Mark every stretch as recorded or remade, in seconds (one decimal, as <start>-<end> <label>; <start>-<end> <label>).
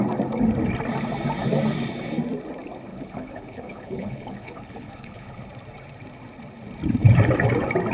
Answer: 0.0-2.9 recorded; 2.9-5.5 remade; 5.5-7.9 recorded